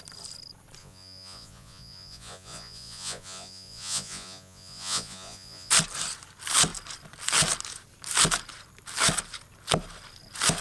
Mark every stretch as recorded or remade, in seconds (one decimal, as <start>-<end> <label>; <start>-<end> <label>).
0.0-0.8 recorded; 0.8-5.7 remade; 5.7-10.6 recorded